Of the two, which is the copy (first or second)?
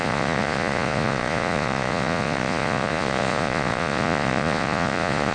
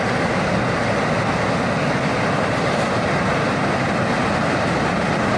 first